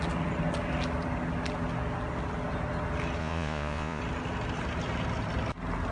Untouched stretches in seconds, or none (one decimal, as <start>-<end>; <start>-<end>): 0.0-3.2; 4.0-5.9